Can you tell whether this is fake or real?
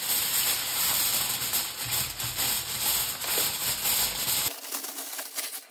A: real